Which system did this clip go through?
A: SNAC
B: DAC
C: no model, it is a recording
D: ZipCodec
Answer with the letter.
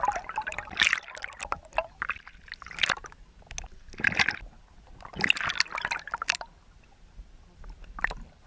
C